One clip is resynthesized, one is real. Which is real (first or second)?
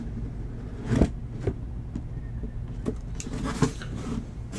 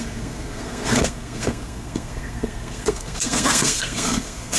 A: first